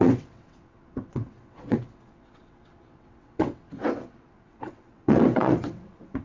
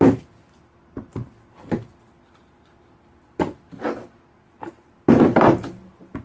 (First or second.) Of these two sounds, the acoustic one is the second